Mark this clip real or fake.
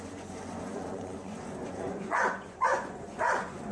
fake